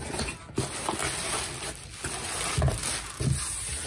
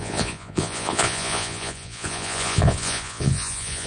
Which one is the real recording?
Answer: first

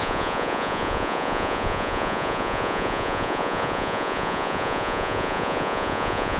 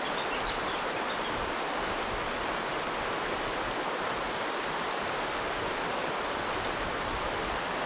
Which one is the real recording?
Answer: second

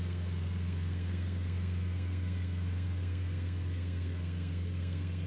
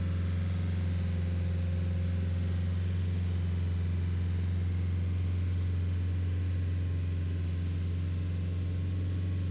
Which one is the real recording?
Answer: second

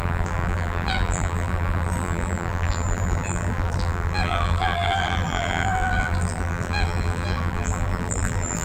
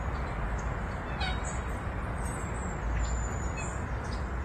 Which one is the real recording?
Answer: second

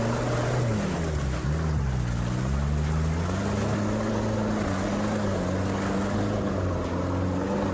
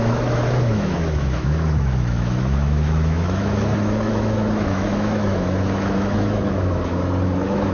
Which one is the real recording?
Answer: first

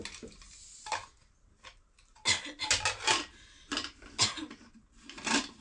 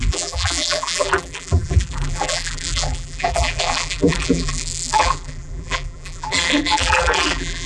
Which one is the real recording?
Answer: first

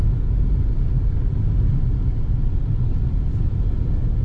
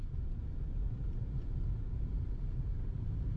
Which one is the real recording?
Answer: first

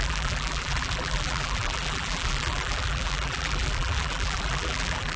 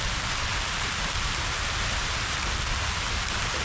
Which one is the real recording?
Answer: second